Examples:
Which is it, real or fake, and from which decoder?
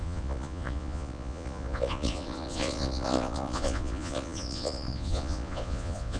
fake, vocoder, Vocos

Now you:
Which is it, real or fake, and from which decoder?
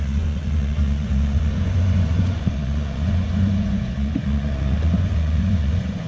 fake, vocoder, Vocos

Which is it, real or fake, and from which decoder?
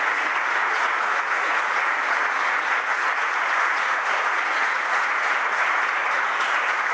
fake, vocoder, Vocos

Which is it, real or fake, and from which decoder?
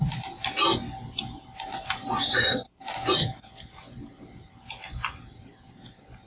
real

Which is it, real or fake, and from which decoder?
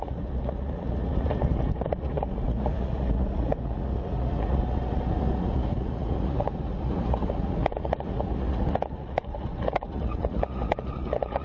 fake, vocoder, Vocos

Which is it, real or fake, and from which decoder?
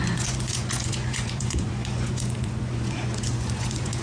fake, vocoder, Vocos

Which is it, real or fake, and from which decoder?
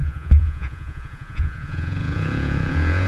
fake, vocoder, Vocos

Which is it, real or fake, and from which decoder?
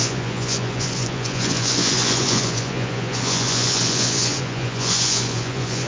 fake, vocoder, Vocos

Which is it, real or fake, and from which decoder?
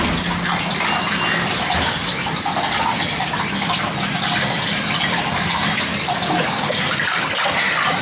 real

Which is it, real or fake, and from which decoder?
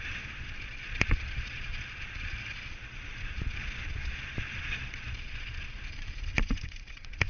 fake, vocoder, Vocos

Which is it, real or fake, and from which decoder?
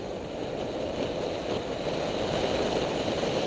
real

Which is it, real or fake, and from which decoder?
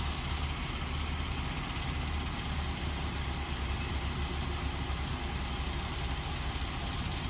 real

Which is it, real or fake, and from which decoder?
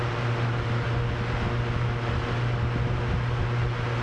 real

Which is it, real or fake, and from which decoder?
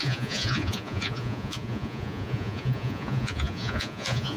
fake, vocoder, Vocos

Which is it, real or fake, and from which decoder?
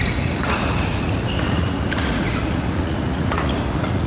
fake, vocoder, Vocos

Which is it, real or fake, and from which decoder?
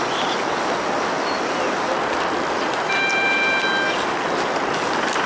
real